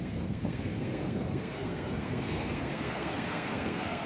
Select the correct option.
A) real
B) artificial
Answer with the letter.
B